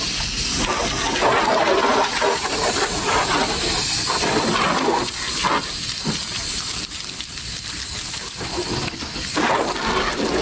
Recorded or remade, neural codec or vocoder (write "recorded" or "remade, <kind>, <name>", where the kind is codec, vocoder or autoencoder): recorded